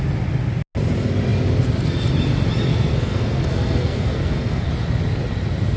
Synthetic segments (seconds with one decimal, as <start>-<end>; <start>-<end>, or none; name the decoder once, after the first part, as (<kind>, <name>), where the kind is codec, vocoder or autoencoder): 2.7-4.7 (codec, SNAC)